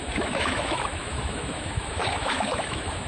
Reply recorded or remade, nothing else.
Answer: remade